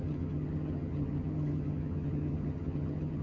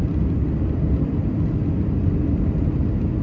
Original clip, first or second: second